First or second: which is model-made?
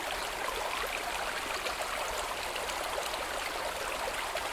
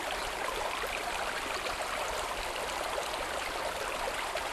second